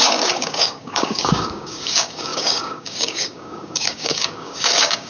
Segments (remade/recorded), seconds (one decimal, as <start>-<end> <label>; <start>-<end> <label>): 0.0-5.1 remade